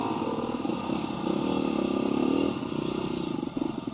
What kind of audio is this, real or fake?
real